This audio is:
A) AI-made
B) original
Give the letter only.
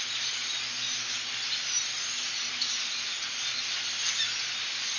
B